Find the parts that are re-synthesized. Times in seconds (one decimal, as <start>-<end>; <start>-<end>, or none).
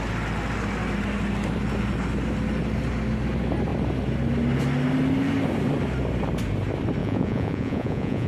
7.0-8.3